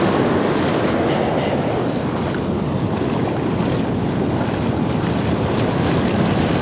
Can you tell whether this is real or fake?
real